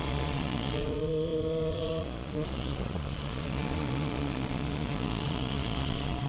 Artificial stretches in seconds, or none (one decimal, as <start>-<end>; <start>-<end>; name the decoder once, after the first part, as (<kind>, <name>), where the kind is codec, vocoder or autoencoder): 0.0-6.3 (vocoder, Vocos)